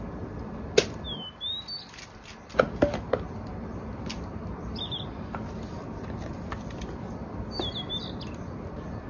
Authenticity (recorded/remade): recorded